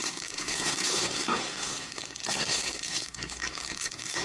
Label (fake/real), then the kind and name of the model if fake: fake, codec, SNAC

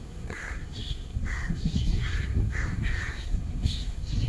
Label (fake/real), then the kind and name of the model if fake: fake, codec, SNAC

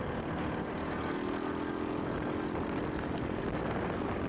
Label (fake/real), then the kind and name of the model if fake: real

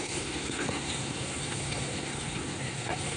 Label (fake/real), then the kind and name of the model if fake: fake, codec, SNAC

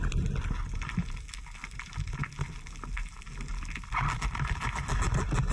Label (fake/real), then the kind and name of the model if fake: real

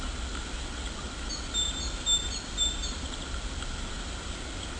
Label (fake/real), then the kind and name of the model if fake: real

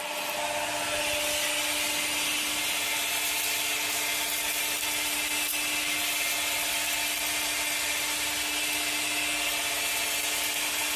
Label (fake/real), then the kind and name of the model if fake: real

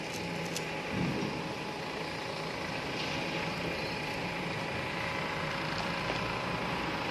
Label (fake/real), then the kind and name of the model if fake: real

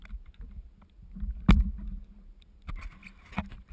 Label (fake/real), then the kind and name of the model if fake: real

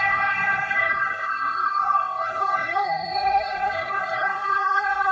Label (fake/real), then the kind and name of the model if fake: fake, codec, SNAC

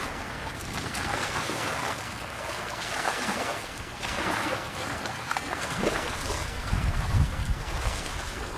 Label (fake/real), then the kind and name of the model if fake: fake, codec, SNAC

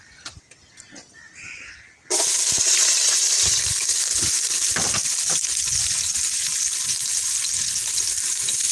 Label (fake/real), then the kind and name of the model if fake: real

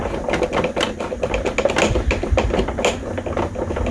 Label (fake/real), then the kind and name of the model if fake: real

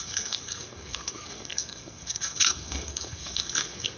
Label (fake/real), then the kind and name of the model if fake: fake, codec, SNAC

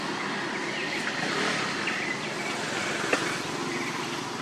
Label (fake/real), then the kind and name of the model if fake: real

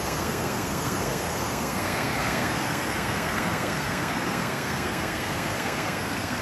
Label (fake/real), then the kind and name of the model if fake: fake, codec, SNAC